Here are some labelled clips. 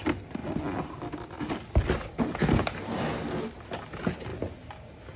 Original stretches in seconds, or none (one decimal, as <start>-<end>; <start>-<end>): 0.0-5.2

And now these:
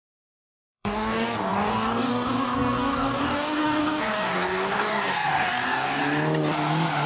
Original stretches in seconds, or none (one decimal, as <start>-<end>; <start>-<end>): 6.0-7.1

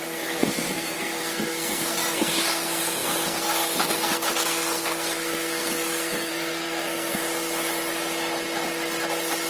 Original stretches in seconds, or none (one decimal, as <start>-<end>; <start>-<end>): 7.2-9.5